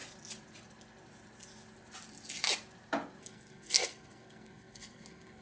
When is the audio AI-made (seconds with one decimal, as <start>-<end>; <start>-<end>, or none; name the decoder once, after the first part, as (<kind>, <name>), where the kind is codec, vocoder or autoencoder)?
3.2-5.4 (codec, SNAC)